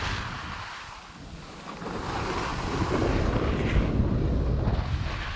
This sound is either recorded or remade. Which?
recorded